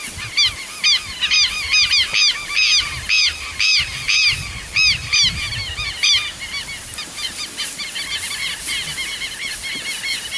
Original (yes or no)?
yes